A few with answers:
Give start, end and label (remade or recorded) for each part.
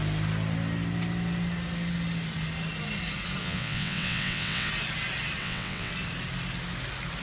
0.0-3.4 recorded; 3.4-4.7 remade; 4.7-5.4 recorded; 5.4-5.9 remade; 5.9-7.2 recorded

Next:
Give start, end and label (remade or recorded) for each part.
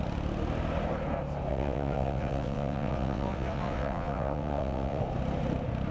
0.0-1.5 recorded; 1.5-5.0 remade; 5.0-5.9 recorded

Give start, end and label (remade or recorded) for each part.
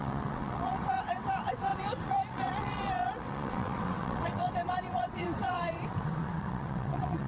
0.0-7.3 remade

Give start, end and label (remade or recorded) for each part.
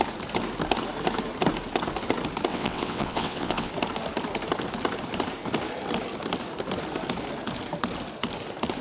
0.0-2.5 recorded; 2.5-3.7 remade; 3.7-8.8 recorded